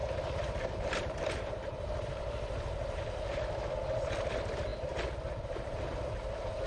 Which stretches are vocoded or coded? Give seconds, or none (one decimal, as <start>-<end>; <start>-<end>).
0.0-3.0